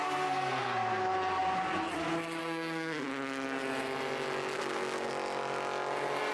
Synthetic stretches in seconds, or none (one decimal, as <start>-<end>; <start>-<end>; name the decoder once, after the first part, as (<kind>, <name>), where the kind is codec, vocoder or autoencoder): 0.0-0.9 (codec, SNAC); 2.4-3.1; 4.5-5.1